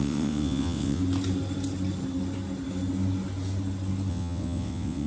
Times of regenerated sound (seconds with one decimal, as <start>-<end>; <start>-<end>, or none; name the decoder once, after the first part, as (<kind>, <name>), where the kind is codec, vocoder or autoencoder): 0.0-1.0 (vocoder, WaveNeXt); 4.1-5.1